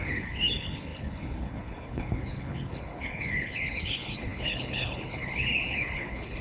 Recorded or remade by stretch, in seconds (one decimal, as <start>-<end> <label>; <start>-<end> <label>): 0.0-6.4 remade